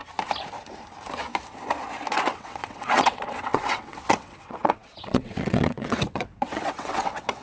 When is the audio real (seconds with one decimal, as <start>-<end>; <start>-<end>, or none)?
0.0-2.1